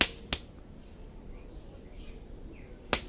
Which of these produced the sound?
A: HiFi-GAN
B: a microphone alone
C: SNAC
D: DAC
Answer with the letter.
B